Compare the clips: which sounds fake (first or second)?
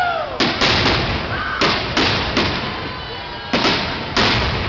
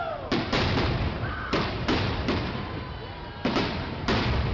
second